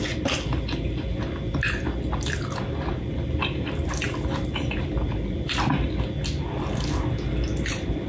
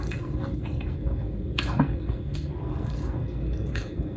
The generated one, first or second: second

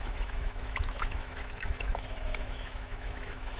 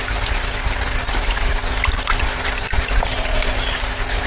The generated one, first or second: first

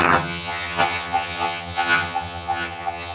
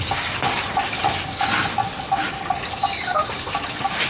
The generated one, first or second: first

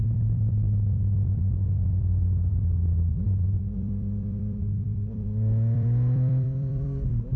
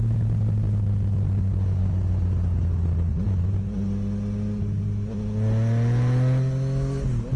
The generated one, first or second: first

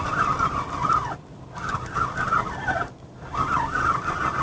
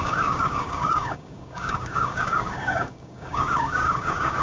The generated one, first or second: second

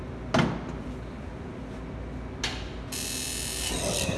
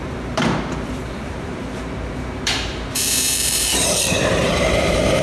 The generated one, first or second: second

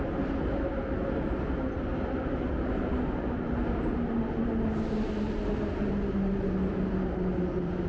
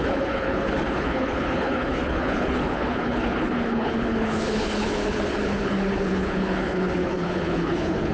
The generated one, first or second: second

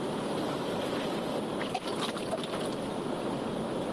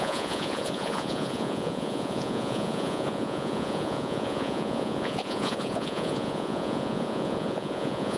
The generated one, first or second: second